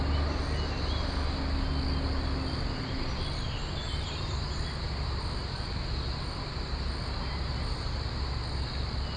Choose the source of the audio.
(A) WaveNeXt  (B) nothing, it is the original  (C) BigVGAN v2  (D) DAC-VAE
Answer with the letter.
B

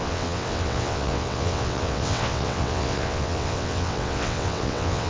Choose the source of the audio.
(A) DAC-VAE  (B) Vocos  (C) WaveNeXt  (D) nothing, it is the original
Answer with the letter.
C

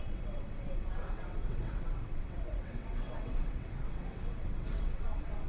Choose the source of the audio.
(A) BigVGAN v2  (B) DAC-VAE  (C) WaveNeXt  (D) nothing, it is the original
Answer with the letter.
C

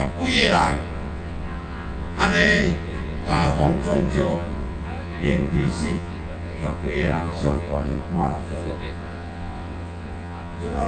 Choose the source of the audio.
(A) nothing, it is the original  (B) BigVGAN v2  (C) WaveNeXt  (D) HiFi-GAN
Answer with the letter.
C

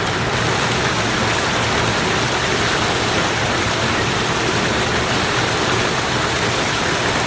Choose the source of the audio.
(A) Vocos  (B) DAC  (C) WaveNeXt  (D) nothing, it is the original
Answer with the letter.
D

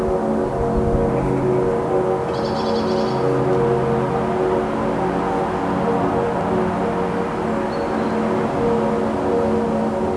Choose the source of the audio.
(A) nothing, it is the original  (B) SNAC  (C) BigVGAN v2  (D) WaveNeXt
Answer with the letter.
A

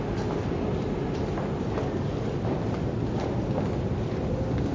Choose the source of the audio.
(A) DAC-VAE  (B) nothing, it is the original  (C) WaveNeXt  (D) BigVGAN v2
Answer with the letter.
B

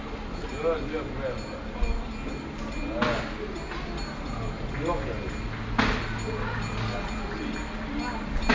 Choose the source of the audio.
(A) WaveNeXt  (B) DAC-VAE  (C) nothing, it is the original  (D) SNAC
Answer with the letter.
C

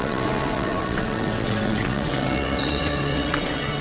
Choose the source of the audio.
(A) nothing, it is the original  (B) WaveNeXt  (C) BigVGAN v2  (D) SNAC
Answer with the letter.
B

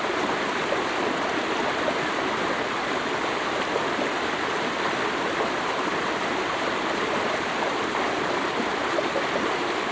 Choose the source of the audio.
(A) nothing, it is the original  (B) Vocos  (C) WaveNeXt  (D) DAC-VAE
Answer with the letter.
A